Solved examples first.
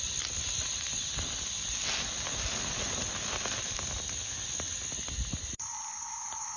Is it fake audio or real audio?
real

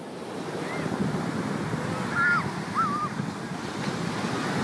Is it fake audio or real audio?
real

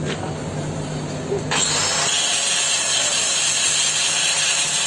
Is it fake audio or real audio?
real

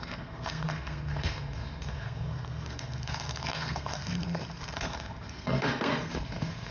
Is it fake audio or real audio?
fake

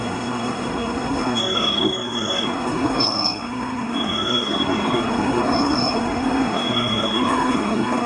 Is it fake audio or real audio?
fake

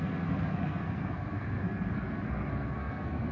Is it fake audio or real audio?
fake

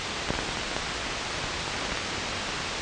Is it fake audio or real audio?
real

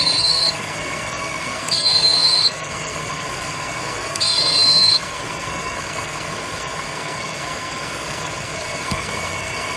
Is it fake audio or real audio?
fake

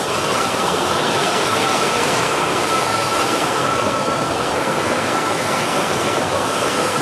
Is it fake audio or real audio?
fake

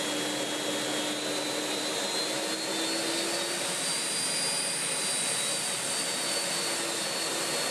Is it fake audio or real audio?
real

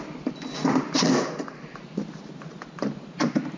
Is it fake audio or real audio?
real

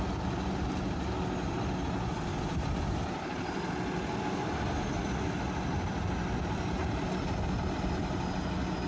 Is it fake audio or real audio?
real